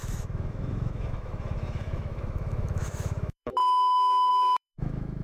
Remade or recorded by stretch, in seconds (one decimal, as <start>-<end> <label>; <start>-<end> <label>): 0.0-5.2 remade

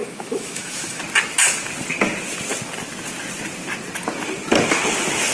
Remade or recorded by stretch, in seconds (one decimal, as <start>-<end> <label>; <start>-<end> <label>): 0.0-1.0 remade; 1.0-5.3 recorded

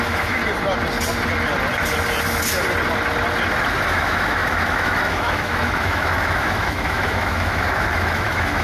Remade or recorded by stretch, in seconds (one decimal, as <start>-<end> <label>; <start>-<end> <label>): 0.0-0.4 remade; 0.4-3.9 recorded; 3.9-8.6 remade